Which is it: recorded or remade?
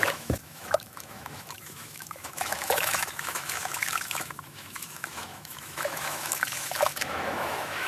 remade